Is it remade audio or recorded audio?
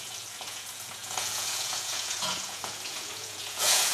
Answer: remade